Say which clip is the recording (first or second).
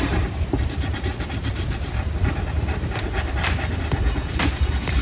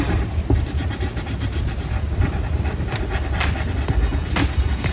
second